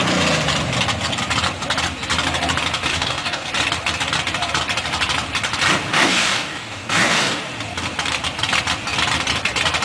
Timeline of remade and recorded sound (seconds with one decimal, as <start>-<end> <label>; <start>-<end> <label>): 0.0-2.9 recorded; 2.9-3.5 remade; 3.5-5.9 recorded; 5.9-7.4 remade; 7.4-9.8 recorded